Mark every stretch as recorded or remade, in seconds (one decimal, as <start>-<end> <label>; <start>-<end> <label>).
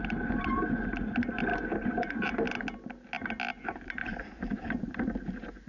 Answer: 0.0-5.7 recorded